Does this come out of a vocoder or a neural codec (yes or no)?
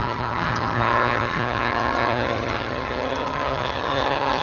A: yes